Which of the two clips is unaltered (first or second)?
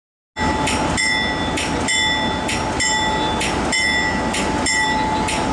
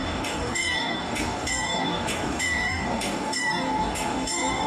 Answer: first